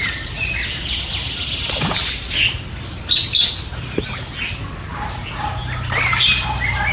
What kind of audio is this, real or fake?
real